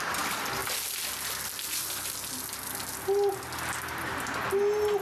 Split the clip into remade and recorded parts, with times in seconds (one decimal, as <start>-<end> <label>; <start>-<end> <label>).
0.0-5.0 recorded